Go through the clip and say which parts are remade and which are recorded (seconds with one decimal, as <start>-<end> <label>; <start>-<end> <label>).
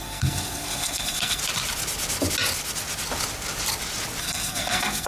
0.0-1.4 remade; 1.4-4.2 recorded; 4.2-5.1 remade